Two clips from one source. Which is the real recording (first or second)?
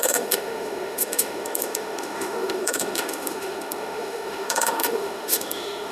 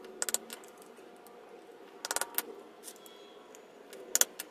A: second